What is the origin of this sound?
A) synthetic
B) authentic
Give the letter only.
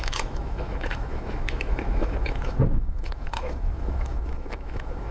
A